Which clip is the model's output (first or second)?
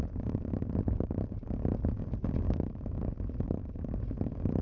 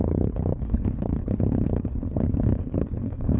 second